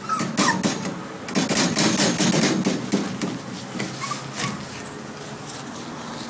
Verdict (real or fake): real